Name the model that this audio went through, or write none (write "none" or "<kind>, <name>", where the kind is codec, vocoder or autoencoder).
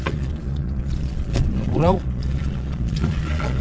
vocoder, Vocos